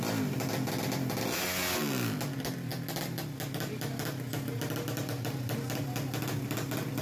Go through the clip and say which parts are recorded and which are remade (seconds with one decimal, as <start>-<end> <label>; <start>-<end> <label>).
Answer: 0.0-7.0 recorded